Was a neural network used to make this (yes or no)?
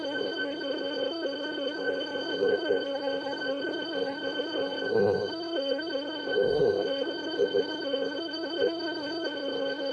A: yes